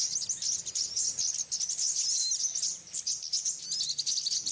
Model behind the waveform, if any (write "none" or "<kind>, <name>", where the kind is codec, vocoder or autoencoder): none